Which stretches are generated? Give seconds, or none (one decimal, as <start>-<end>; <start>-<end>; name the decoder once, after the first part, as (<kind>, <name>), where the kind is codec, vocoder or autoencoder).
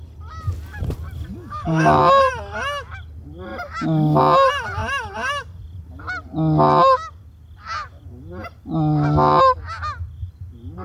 1.3-2.0 (codec, DAC)